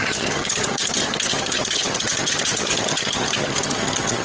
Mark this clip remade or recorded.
remade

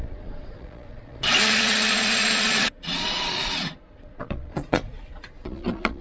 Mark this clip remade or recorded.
remade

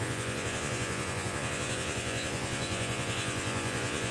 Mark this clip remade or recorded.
remade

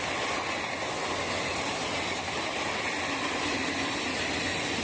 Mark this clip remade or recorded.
recorded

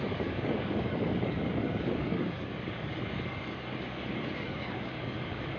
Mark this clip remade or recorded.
remade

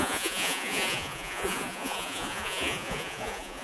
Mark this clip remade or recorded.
remade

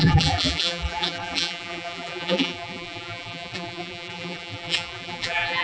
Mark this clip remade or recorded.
remade